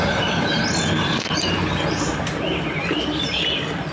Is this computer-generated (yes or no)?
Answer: no